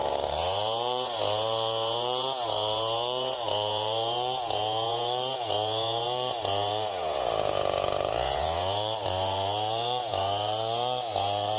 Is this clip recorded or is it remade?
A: remade